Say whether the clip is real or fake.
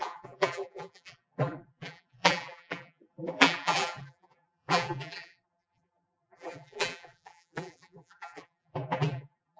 fake